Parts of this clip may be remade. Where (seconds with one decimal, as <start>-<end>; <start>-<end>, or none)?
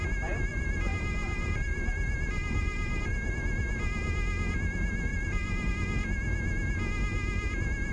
0.5-3.3; 5.1-5.7